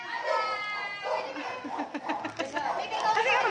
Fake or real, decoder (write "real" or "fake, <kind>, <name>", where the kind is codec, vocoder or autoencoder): real